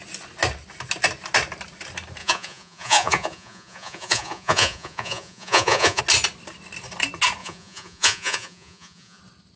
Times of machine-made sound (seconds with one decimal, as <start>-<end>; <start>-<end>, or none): 2.2-6.0; 7.4-9.2